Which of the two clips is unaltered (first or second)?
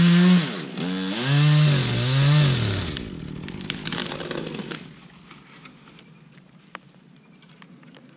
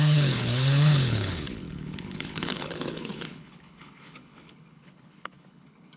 first